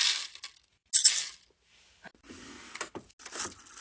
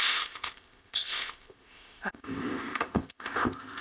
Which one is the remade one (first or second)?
second